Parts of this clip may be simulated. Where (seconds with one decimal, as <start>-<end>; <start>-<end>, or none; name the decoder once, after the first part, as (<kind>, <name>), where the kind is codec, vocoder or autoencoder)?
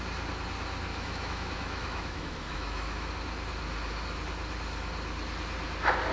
0.9-3.1 (autoencoder, DAC-VAE)